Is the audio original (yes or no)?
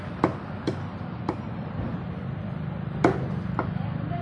yes